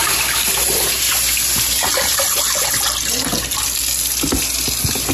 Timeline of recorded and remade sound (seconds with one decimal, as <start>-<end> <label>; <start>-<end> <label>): 0.0-5.1 recorded